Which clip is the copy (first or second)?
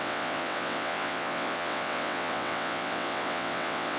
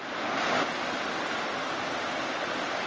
first